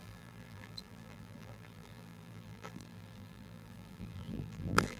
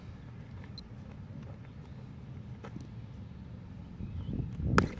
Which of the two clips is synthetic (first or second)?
first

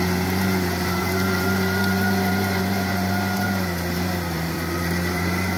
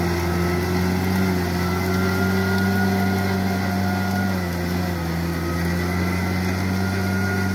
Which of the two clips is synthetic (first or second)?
first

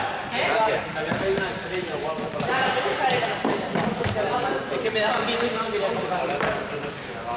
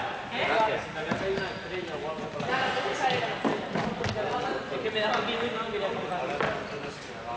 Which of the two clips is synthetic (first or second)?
first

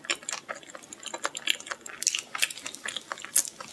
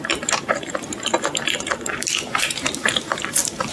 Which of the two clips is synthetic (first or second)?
second